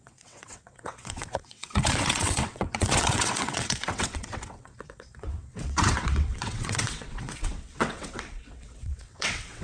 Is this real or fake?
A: fake